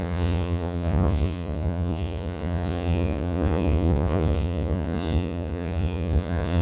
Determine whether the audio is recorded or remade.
remade